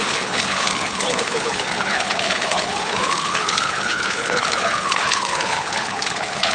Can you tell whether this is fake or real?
fake